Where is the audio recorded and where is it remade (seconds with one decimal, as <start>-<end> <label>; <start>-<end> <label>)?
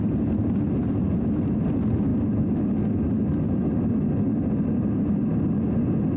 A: 0.0-6.2 recorded